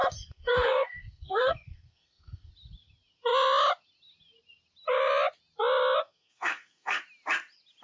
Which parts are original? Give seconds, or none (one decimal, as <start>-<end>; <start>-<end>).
2.5-6.0; 7.0-7.8